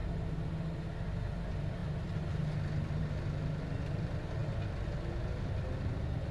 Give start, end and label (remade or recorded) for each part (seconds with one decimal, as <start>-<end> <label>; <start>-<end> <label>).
0.0-6.3 recorded